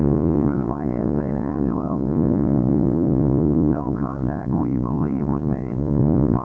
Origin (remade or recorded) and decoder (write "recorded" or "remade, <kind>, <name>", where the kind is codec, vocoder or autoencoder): remade, vocoder, Vocos